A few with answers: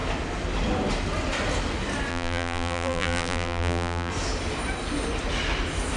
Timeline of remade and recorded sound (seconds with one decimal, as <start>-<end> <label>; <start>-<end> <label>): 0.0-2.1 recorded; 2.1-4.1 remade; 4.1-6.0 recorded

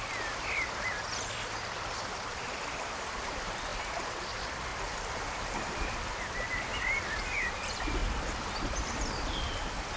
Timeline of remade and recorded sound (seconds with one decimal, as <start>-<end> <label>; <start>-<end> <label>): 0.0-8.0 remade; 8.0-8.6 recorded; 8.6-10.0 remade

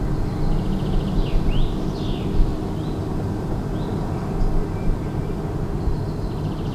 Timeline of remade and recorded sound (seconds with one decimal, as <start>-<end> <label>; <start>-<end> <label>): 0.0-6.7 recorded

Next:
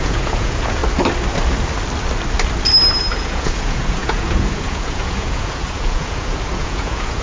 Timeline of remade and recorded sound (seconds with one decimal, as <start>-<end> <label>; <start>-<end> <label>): 0.0-0.8 remade; 0.8-3.2 recorded; 3.2-7.2 remade

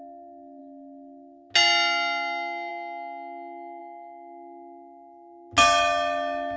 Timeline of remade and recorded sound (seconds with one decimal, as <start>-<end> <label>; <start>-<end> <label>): 0.0-6.6 recorded